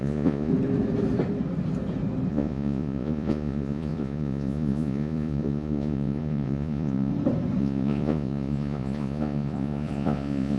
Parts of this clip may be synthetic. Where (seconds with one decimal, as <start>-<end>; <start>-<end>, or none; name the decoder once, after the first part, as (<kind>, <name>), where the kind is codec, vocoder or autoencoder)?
0.0-0.5 (vocoder, Vocos); 2.3-7.1; 7.6-10.6